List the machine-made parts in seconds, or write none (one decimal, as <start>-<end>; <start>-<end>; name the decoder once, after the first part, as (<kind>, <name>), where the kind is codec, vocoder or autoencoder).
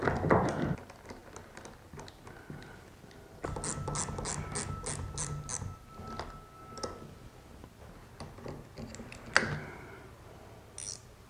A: none